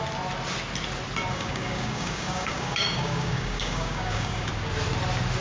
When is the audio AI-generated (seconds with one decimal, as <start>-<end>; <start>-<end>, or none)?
1.3-4.5